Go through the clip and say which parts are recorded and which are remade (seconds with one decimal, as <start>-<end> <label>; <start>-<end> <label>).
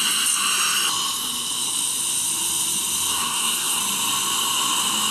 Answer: 0.0-3.1 recorded; 3.1-3.8 remade; 3.8-5.1 recorded